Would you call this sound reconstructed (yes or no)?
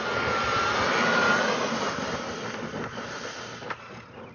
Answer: no